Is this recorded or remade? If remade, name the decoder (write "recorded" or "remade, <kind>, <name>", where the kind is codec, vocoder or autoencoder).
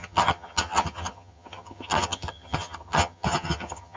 remade, vocoder, HiFi-GAN